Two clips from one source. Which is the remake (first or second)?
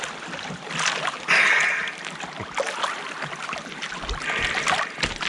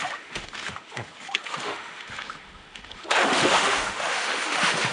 second